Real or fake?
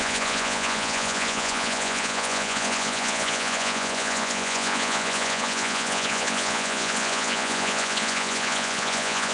fake